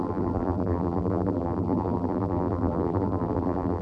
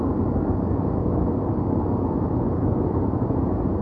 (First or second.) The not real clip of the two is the first